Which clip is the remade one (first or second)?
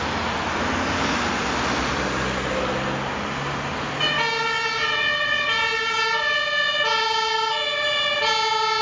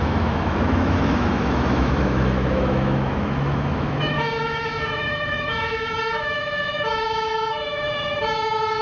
second